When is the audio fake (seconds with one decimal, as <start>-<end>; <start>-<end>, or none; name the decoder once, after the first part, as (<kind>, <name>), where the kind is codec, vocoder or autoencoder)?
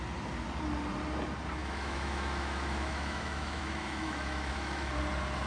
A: 1.6-4.9 (autoencoder, DAC-VAE)